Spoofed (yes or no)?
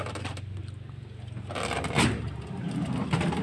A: no